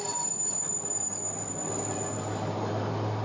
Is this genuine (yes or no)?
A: yes